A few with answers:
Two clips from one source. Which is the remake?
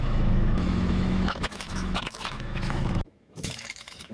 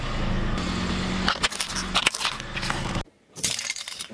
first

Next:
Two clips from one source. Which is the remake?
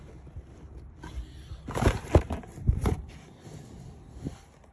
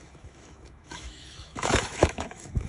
second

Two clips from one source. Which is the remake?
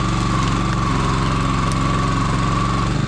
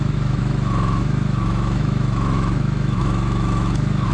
second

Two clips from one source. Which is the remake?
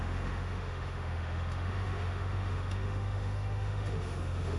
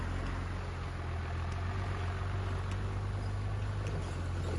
first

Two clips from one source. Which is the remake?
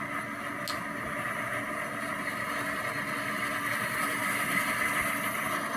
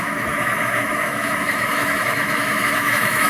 second